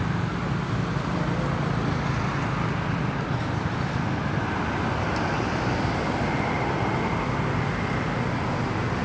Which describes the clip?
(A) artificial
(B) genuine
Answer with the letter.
B